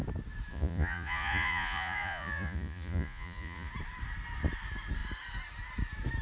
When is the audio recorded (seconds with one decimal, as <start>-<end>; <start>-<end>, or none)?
0.0-0.5; 3.7-6.2